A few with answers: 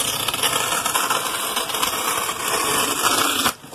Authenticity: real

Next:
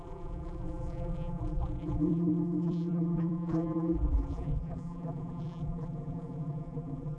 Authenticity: fake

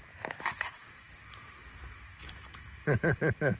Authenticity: fake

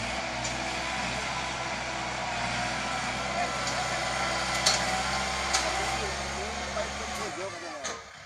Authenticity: real